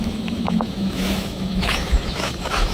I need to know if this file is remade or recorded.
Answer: remade